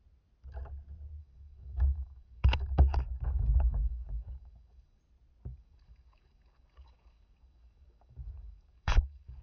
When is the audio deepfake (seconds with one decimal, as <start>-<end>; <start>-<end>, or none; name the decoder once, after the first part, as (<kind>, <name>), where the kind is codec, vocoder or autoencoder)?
1.2-5.0 (codec, DAC); 5.5-9.4